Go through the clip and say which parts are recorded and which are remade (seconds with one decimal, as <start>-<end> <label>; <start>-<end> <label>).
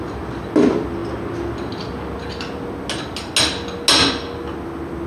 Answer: 0.0-5.1 recorded